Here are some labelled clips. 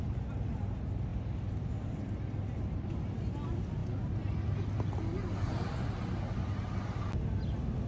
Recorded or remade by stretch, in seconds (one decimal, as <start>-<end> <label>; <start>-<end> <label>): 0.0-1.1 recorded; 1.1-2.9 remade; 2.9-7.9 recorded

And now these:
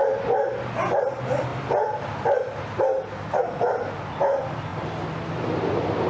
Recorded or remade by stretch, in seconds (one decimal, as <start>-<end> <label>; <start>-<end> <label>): 0.0-6.1 recorded

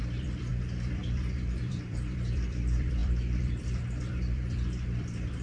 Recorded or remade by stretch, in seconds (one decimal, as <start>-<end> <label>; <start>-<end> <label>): 0.0-5.4 remade